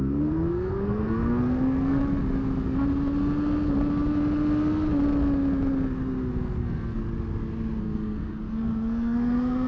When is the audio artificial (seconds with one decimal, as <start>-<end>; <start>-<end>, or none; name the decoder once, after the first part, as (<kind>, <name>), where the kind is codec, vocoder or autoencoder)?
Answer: 0.0-2.0 (codec, SNAC); 6.3-7.0; 7.8-9.7